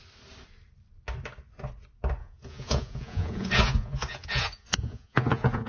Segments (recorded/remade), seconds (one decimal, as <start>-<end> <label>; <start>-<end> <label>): 0.0-2.2 recorded; 2.2-5.7 remade